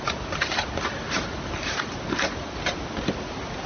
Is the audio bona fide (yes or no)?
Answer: yes